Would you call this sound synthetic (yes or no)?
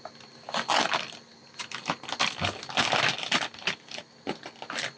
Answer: no